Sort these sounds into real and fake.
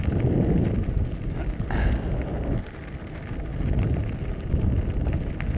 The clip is real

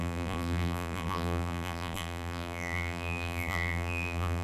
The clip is fake